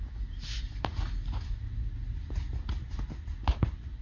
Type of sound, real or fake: real